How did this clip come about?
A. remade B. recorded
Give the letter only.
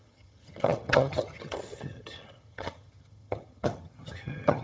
A